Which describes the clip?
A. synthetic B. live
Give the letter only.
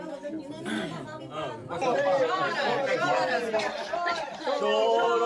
B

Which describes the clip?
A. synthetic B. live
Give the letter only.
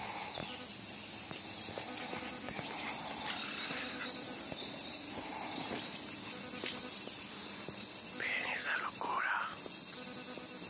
B